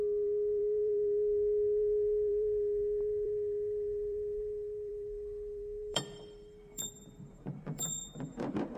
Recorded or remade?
remade